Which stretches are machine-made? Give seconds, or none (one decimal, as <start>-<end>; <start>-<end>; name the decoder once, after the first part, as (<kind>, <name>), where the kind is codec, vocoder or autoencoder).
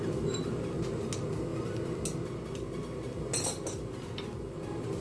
none